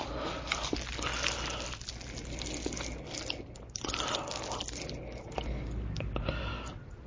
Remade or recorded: recorded